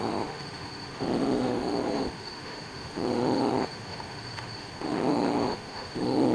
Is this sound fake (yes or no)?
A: yes